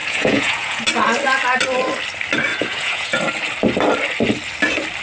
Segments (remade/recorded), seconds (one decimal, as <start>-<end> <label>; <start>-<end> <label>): 0.0-0.8 remade; 0.8-2.5 recorded; 2.5-3.2 remade; 3.2-5.0 recorded